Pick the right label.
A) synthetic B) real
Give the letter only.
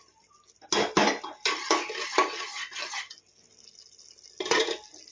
B